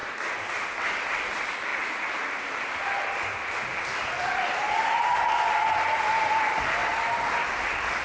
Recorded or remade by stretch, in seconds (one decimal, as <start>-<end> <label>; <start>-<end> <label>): 0.0-8.0 recorded

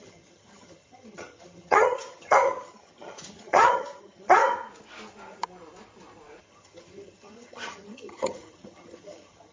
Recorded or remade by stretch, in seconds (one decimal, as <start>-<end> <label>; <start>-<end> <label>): 0.0-4.4 remade; 4.4-6.4 recorded; 6.4-9.5 remade

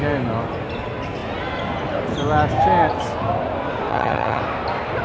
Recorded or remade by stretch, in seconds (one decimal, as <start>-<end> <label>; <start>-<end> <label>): 0.0-3.9 recorded; 3.9-4.4 remade; 4.4-5.0 recorded

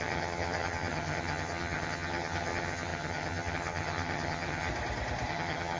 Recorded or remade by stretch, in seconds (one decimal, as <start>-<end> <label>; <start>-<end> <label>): 0.0-4.7 remade; 4.7-5.3 recorded; 5.3-5.8 remade

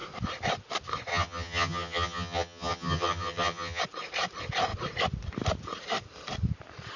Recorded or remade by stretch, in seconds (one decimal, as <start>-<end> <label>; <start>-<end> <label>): 0.0-1.1 recorded; 1.1-3.8 remade; 3.8-7.0 recorded

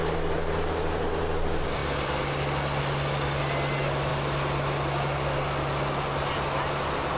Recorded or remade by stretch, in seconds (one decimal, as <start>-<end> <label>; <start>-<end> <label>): 0.0-7.2 recorded